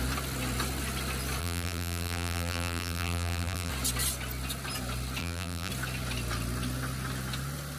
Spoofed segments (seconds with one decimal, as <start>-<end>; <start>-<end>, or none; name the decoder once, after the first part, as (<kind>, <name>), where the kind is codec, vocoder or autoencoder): 1.4-3.7 (vocoder, BigVGAN v2); 5.2-5.7